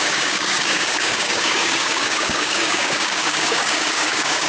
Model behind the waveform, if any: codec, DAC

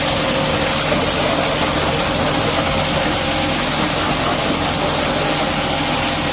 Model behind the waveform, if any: none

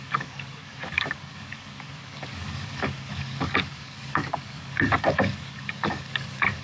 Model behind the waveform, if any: codec, DAC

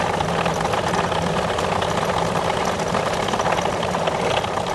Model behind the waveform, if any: none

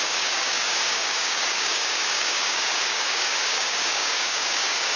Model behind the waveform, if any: codec, DAC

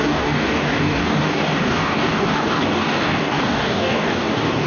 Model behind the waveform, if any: codec, DAC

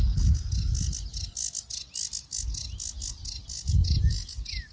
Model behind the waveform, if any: none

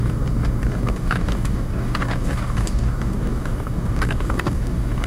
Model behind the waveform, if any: codec, DAC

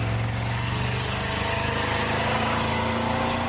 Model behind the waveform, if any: codec, DAC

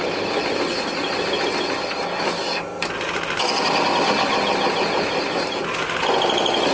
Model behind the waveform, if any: none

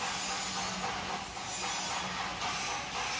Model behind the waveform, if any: none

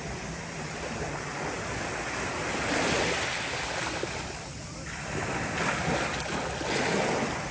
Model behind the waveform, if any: none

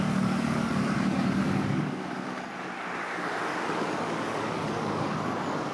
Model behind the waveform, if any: codec, DAC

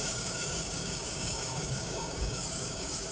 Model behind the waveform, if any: codec, DAC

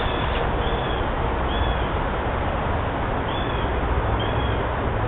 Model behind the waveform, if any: none